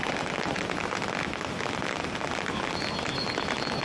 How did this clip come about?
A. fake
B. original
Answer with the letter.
B